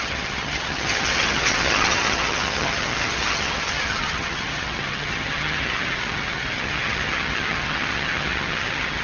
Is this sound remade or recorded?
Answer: remade